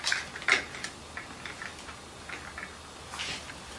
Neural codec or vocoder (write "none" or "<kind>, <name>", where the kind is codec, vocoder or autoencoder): none